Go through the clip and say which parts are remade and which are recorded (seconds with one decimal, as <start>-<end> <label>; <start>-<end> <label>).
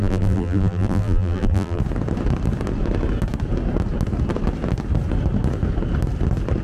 0.0-1.8 remade; 1.8-6.6 recorded